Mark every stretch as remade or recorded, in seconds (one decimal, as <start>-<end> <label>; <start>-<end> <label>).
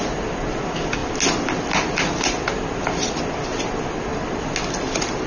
0.0-5.3 recorded